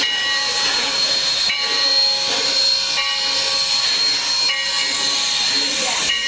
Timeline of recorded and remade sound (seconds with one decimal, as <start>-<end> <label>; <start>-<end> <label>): 0.0-1.9 remade; 1.9-5.7 recorded; 5.7-6.3 remade